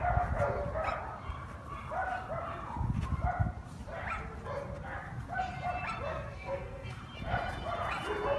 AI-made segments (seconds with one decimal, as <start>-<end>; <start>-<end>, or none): 6.1-7.0